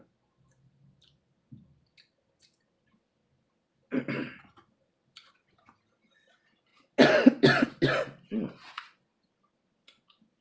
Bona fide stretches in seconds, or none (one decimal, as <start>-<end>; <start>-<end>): 0.0-10.4